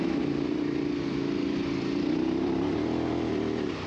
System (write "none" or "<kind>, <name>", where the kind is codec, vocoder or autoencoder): none